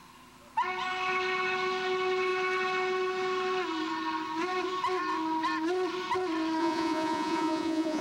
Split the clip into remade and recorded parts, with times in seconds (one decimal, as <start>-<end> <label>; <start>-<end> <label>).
0.0-6.6 recorded; 6.6-8.0 remade